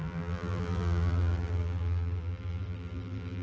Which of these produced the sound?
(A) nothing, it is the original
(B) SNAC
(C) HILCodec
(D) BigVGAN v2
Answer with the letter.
D